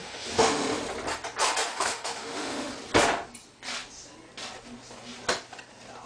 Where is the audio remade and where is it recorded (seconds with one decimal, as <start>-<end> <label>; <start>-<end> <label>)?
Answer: 0.0-0.8 remade; 0.8-1.7 recorded; 1.7-2.7 remade; 2.7-6.1 recorded